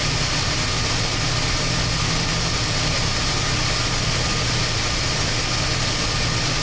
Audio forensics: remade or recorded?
recorded